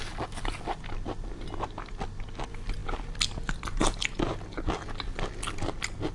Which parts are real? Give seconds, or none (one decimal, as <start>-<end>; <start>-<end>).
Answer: 0.0-6.1